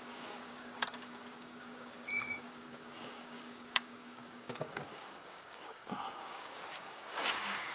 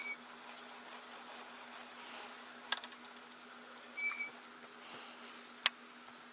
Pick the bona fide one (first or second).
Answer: second